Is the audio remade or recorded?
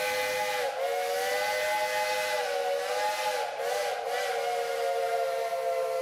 recorded